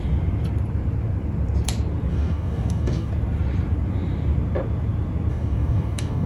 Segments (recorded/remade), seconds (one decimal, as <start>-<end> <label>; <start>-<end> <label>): 0.0-2.1 recorded; 2.1-3.1 remade; 3.1-5.3 recorded; 5.3-6.3 remade